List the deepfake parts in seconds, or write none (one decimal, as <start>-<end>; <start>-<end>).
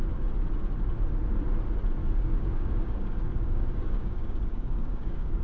2.0-5.4